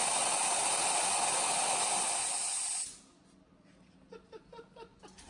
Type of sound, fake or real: real